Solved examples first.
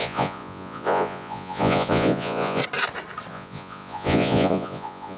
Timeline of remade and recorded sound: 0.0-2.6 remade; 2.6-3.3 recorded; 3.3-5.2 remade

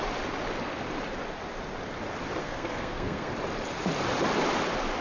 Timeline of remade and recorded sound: 0.0-2.4 recorded; 2.4-3.3 remade; 3.3-5.0 recorded

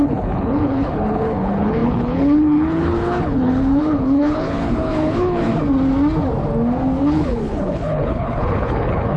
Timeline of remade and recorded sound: 0.0-5.5 remade; 5.5-7.0 recorded; 7.0-9.2 remade

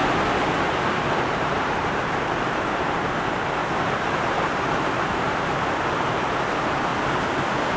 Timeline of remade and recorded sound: 0.0-1.3 recorded; 1.3-3.6 remade; 3.6-4.4 recorded; 4.4-6.9 remade; 6.9-7.8 recorded

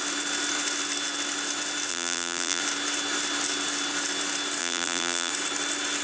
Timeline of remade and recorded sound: 0.0-1.9 recorded; 1.9-2.6 remade; 2.6-4.6 recorded; 4.6-5.3 remade; 5.3-6.0 recorded

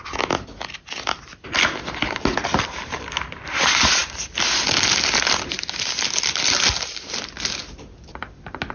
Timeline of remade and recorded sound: 0.0-8.7 recorded